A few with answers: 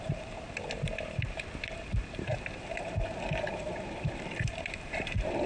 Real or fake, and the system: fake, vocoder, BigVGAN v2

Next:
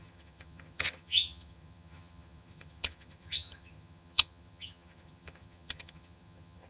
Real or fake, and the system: fake, vocoder, HiFi-GAN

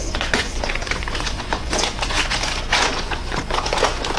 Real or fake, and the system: fake, vocoder, Vocos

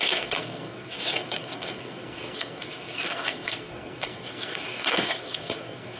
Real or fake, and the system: fake, codec, SNAC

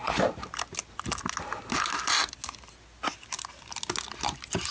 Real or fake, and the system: real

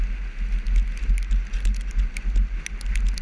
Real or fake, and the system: real